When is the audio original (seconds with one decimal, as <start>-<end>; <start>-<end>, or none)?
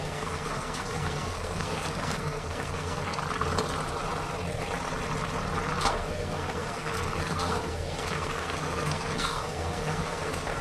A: 3.2-5.8